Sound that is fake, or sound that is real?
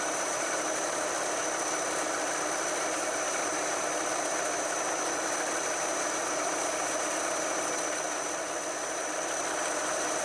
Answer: real